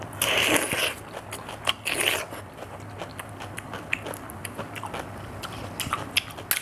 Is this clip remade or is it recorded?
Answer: recorded